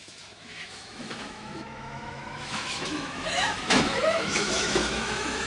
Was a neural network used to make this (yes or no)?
yes